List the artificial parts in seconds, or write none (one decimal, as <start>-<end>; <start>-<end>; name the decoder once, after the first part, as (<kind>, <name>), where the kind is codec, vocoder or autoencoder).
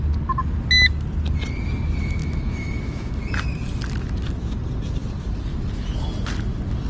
2.2-3.1 (autoencoder, DAC-VAE)